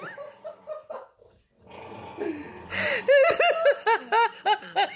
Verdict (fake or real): real